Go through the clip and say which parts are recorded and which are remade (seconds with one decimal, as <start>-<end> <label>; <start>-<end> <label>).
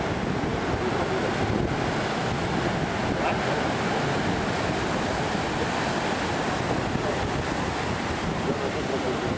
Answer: 0.0-9.4 recorded